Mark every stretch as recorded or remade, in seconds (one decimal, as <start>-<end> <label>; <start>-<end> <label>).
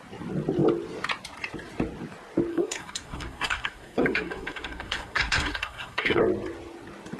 0.0-2.5 recorded; 2.5-6.2 remade; 6.2-7.2 recorded